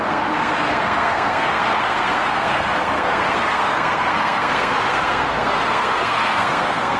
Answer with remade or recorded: remade